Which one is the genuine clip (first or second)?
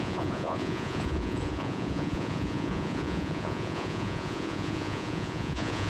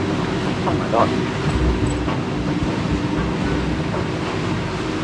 second